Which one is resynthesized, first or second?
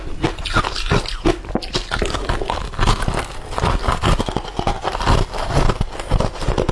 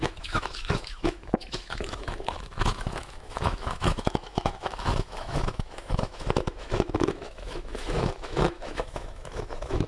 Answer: second